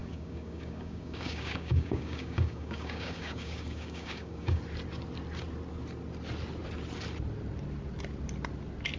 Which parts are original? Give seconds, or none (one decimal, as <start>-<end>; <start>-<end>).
4.6-9.0